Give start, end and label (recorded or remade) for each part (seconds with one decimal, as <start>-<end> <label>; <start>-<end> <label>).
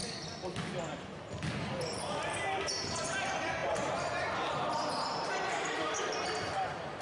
0.0-1.0 recorded; 1.0-7.0 remade